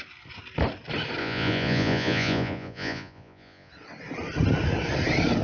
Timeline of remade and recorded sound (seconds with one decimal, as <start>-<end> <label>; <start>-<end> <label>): 0.0-1.2 recorded; 1.2-3.7 remade; 3.7-5.4 recorded